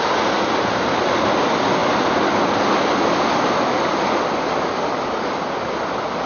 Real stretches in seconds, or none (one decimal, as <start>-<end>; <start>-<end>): 0.0-6.3